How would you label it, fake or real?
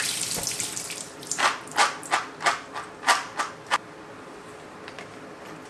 real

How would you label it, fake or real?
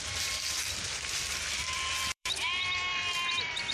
fake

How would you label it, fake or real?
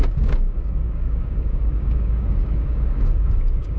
fake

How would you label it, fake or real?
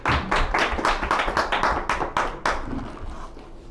real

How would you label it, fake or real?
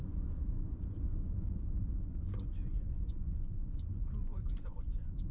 fake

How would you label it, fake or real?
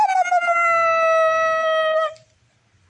real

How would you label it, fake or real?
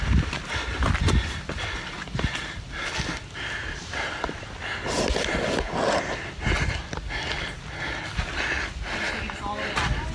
real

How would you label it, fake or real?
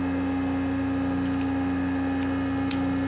real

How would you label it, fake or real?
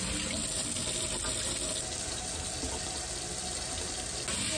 real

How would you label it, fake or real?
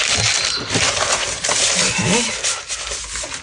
real